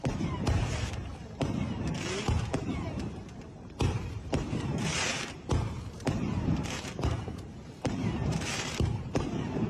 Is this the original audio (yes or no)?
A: no